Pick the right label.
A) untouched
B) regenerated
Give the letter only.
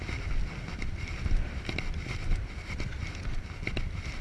A